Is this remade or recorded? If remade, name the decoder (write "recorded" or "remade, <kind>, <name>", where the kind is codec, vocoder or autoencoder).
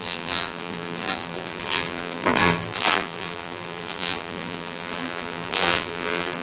remade, vocoder, BigVGAN v2